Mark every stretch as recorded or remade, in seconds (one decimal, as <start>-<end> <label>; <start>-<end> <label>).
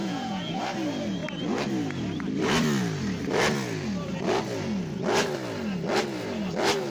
0.0-0.6 remade; 0.6-6.9 recorded